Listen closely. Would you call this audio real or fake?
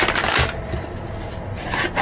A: real